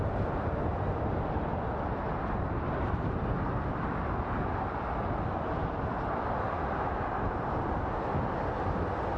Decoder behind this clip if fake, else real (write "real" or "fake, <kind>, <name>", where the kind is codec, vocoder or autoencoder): real